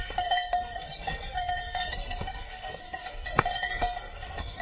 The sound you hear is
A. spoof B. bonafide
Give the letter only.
A